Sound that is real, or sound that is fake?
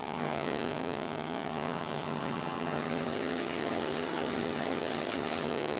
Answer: fake